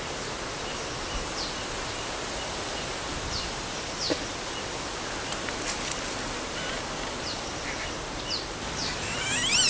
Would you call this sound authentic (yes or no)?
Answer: yes